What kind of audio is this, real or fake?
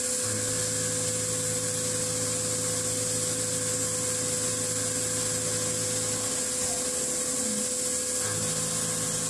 real